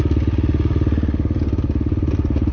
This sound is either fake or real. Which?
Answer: real